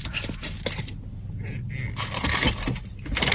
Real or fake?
real